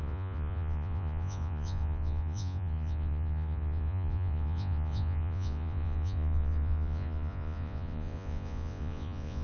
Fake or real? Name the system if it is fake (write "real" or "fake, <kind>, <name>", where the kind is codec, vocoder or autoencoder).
fake, vocoder, Vocos